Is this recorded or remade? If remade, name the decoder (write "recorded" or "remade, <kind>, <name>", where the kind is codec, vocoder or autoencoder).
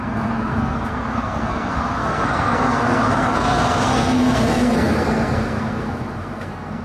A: remade, codec, SNAC